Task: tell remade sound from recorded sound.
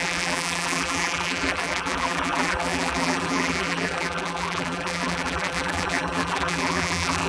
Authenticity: remade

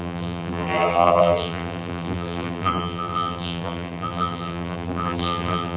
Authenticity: remade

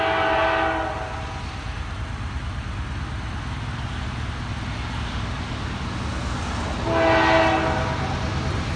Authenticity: recorded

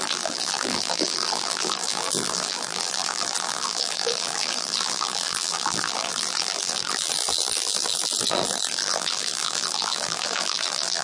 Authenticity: remade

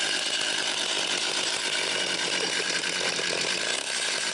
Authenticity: remade